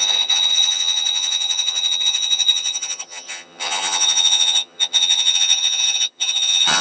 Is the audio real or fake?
fake